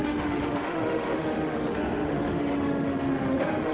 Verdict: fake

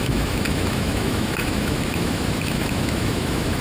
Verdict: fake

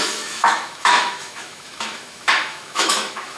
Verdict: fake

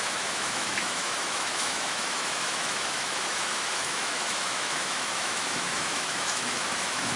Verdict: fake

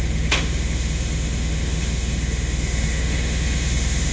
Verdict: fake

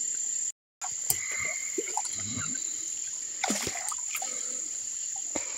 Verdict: real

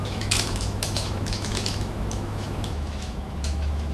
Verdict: fake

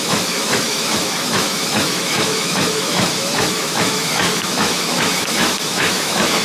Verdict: fake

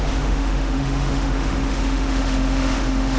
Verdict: fake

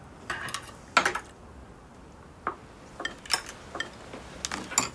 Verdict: real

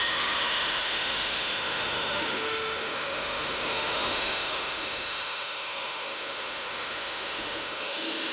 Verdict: fake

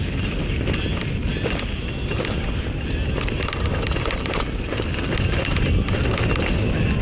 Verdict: real